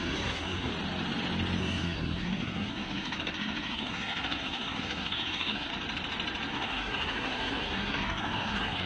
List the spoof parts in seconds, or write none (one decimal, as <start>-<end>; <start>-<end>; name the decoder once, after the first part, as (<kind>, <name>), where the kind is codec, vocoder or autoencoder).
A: 0.0-0.7 (codec, SNAC); 1.6-5.7; 6.5-8.9